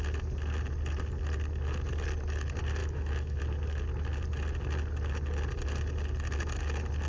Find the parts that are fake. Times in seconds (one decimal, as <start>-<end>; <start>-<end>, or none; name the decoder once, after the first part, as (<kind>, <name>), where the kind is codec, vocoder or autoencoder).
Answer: 2.8-3.4 (autoencoder, DAC-VAE)